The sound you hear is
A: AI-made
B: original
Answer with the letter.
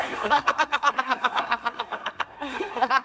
A